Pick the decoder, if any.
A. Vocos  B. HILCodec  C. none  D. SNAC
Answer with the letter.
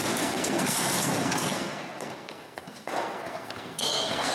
D